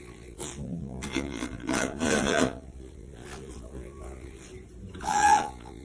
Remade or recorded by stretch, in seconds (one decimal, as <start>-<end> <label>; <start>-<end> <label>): 0.0-4.5 remade; 4.5-5.0 recorded; 5.0-5.8 remade